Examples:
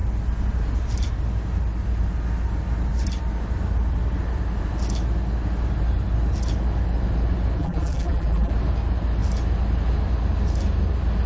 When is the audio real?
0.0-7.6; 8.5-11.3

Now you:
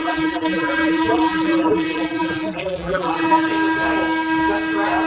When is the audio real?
3.5-5.1

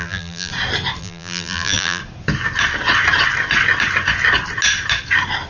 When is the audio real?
0.5-1.0; 2.0-5.5

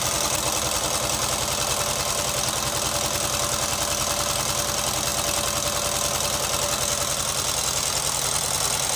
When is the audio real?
0.0-9.0

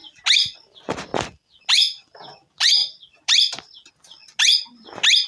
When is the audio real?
0.0-5.3

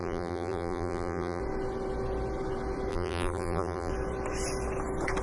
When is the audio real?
1.4-2.9; 3.9-5.2